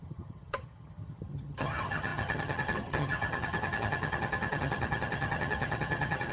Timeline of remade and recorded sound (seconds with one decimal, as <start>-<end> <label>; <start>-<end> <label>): 0.0-6.3 remade